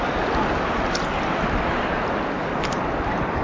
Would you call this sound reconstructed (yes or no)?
no